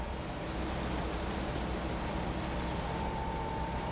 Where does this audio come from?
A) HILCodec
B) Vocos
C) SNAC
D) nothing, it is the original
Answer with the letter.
D